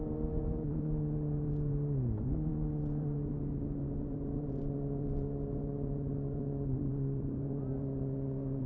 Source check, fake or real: fake